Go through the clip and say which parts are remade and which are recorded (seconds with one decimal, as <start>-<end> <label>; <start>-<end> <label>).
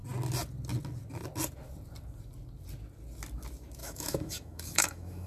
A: 0.0-3.8 recorded; 3.8-5.3 remade